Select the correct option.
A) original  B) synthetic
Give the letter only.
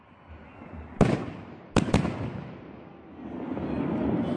A